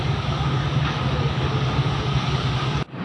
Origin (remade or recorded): remade